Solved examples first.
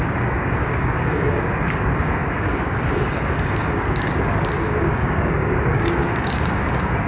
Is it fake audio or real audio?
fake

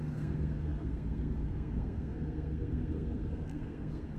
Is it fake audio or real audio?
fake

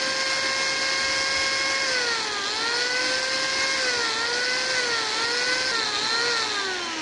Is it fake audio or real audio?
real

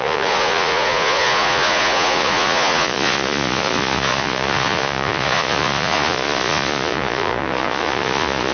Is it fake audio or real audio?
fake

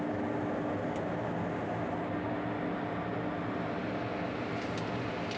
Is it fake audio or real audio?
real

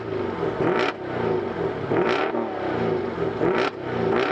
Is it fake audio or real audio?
real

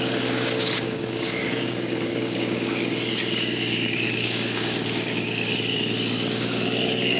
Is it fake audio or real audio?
fake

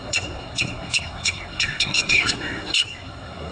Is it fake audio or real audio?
fake